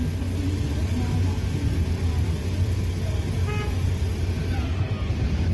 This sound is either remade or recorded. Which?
recorded